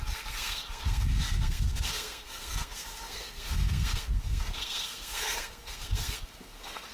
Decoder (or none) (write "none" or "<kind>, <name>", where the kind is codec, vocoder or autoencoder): codec, SNAC